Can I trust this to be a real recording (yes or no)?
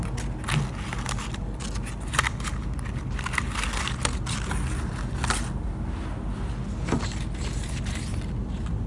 yes